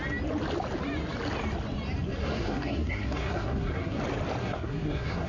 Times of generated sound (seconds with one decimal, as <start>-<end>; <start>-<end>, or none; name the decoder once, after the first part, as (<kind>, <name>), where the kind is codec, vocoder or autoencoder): 2.2-4.0 (codec, SNAC); 4.4-5.3